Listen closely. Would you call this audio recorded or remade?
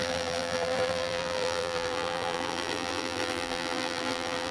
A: remade